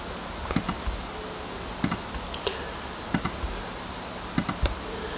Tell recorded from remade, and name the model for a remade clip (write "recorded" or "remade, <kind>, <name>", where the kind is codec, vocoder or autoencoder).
recorded